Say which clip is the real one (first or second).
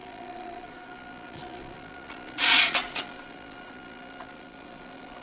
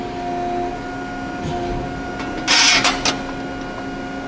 second